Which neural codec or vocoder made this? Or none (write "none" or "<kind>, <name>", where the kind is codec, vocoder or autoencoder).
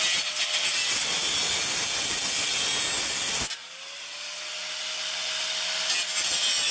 none